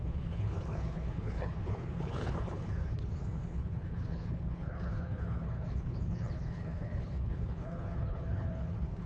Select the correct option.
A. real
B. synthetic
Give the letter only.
B